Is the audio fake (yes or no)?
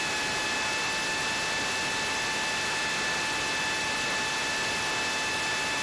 no